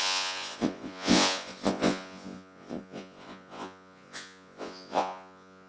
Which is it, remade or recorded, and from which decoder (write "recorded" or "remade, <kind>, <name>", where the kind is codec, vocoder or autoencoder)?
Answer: remade, vocoder, Vocos